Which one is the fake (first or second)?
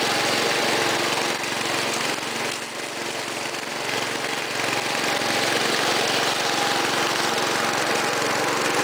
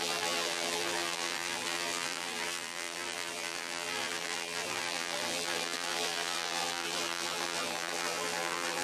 second